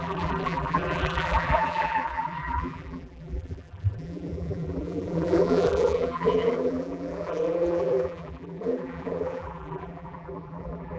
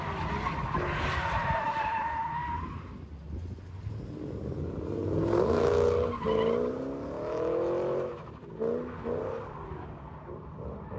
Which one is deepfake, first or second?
first